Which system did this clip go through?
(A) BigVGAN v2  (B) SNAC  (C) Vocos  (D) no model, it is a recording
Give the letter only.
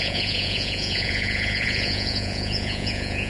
C